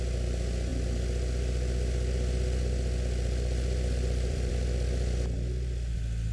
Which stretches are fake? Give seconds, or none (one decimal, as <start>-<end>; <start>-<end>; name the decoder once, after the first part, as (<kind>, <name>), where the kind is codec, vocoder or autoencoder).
0.7-4.5 (vocoder, BigVGAN v2)